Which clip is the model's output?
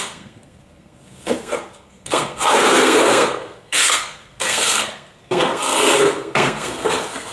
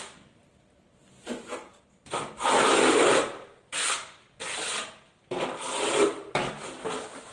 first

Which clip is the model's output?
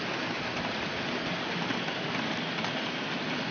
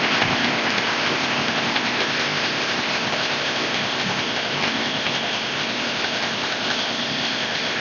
second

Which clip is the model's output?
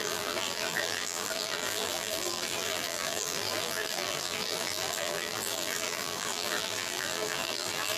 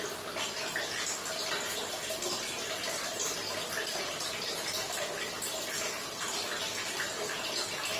first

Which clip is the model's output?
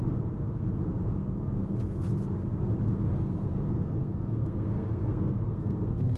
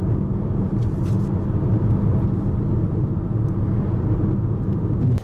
first